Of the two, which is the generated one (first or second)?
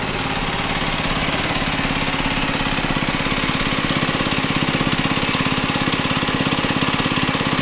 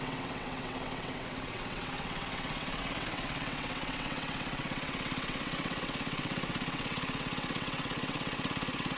second